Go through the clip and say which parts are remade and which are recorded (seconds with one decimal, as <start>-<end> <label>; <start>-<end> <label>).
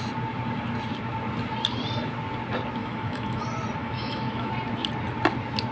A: 0.0-2.8 recorded; 2.8-3.4 remade; 3.4-3.8 recorded; 3.8-4.5 remade; 4.5-5.7 recorded